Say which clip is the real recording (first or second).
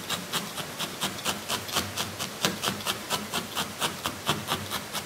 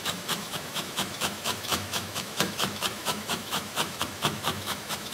first